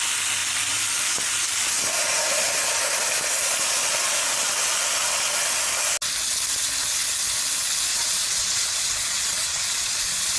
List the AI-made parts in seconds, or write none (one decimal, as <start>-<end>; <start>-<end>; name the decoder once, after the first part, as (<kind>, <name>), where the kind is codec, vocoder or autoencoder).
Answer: 7.9-10.4 (vocoder, Vocos)